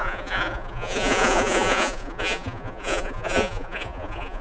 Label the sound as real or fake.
fake